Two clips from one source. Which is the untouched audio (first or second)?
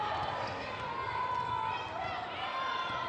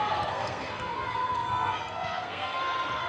first